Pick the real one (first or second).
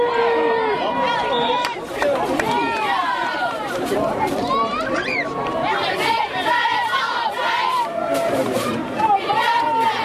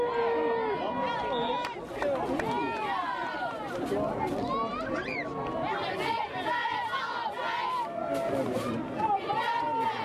second